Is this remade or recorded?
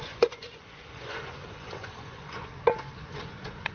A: remade